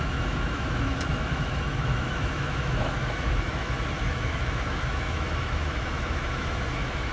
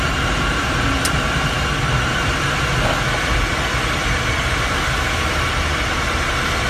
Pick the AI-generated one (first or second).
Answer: first